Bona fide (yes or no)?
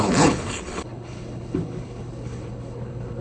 no